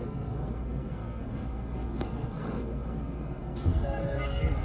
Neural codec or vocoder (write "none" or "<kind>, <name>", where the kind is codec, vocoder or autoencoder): codec, SNAC